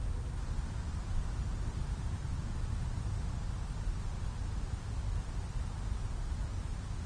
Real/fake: real